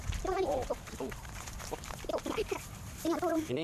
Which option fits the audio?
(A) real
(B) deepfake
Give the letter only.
B